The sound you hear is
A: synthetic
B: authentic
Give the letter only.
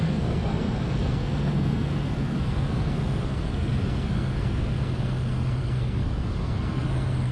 A